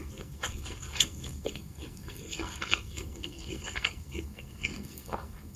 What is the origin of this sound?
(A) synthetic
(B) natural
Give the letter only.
A